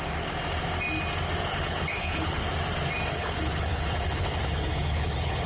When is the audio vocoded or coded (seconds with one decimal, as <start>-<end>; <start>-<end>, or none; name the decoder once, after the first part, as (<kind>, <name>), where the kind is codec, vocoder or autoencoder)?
1.5-2.4 (codec, HILCodec); 3.1-5.5